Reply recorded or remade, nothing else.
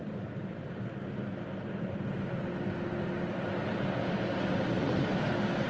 recorded